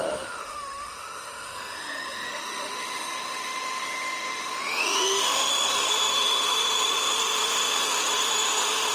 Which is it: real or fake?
fake